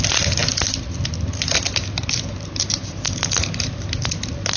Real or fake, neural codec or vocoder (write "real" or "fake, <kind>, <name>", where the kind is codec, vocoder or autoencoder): real